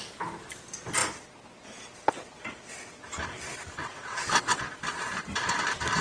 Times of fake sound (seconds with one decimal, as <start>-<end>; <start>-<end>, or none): 3.8-4.6